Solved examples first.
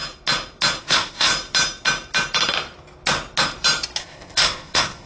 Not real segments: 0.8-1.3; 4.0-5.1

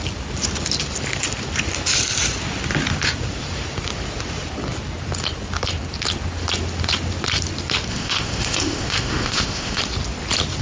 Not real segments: 7.9-9.8

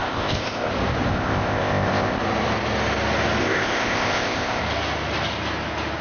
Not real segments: 0.0-0.7; 1.1-2.2; 3.4-4.6